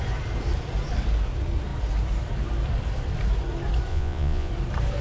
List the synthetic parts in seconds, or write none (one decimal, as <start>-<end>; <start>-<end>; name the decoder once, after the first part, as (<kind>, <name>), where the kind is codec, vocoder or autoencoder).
3.9-4.5 (vocoder, Vocos)